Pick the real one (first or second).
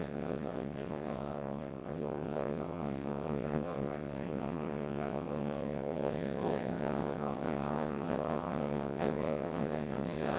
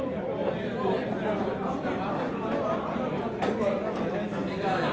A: second